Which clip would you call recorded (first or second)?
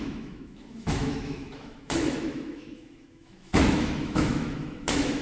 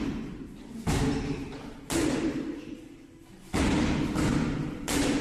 second